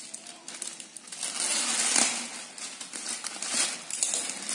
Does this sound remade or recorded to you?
recorded